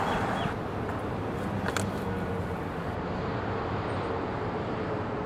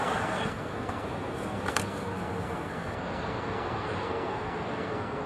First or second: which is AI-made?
second